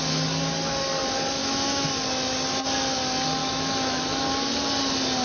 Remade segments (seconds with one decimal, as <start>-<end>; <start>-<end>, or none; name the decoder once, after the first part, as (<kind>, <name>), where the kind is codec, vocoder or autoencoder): 1.4-1.9 (autoencoder, DAC-VAE); 3.4-4.0